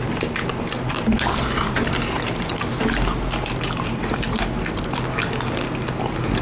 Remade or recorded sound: recorded